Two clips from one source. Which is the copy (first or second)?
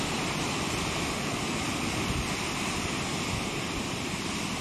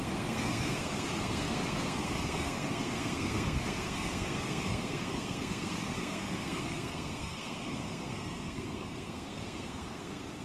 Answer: second